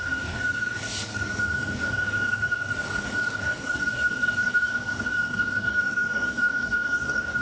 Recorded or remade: remade